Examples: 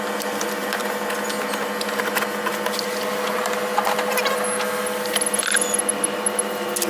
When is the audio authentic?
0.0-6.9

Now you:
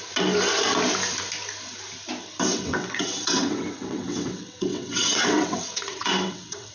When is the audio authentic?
0.0-2.5

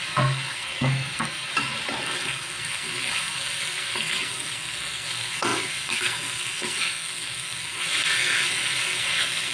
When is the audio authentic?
1.5-2.0

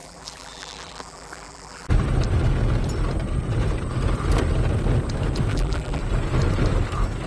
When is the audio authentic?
1.9-5.5; 6.0-7.3